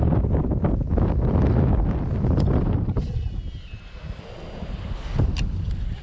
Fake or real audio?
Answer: real